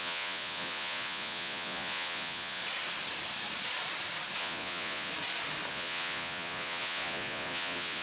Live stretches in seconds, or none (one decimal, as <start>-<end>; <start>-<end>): 2.6-4.4; 5.1-5.7